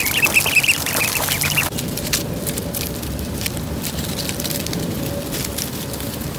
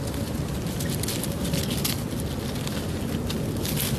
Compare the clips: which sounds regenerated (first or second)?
first